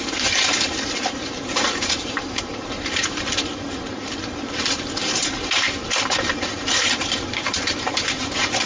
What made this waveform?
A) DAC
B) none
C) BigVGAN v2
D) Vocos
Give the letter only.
C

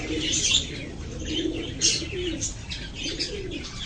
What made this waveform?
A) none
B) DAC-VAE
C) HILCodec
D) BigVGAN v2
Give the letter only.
A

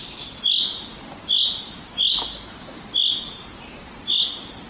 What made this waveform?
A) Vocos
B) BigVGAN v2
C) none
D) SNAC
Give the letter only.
C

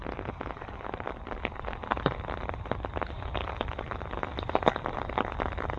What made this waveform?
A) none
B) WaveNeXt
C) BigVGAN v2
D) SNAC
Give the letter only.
A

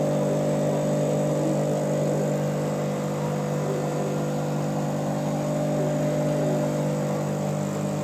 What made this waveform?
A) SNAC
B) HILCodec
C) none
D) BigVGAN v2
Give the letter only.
C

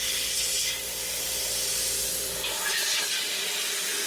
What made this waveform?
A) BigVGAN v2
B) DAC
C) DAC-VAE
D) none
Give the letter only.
D